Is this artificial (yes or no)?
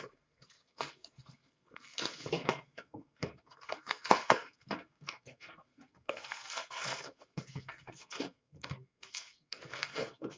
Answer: yes